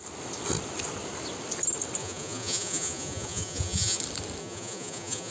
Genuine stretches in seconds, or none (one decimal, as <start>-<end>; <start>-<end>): 0.0-2.0; 4.0-4.4